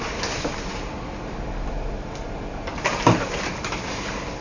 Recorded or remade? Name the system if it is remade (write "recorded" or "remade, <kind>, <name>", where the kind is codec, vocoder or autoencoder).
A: remade, vocoder, BigVGAN v2